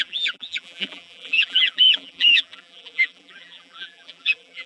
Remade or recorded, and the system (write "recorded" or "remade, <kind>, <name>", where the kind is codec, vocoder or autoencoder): remade, vocoder, BigVGAN v2